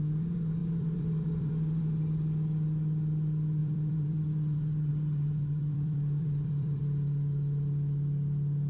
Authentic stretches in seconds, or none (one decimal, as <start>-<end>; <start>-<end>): 0.0-0.6; 1.8-3.6; 4.9-5.6; 6.8-8.7